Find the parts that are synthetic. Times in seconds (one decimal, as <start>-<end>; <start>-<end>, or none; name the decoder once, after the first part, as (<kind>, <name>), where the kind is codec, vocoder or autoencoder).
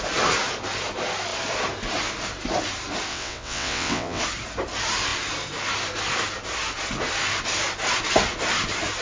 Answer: 3.1-4.2 (vocoder, WaveNeXt)